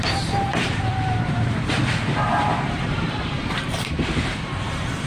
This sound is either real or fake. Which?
fake